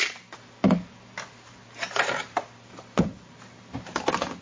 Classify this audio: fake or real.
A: real